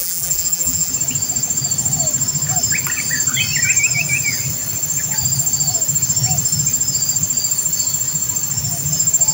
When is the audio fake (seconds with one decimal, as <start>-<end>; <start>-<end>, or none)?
0.0-0.9